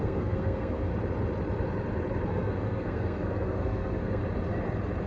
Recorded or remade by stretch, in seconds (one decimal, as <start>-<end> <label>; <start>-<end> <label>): 0.0-0.9 remade; 0.9-2.3 recorded; 2.3-4.2 remade; 4.2-5.1 recorded